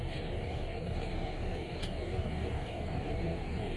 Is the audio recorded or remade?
remade